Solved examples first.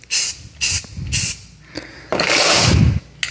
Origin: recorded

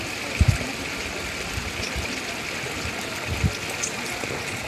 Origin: recorded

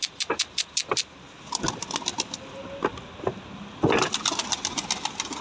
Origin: recorded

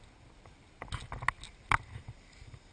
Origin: recorded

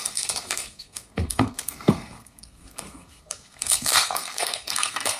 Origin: remade